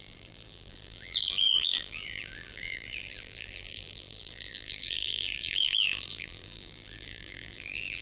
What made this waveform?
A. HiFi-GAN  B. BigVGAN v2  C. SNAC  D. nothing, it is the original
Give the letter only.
B